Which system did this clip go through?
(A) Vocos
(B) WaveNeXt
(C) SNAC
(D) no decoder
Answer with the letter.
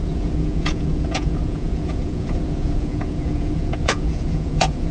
A